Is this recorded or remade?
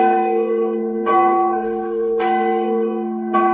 remade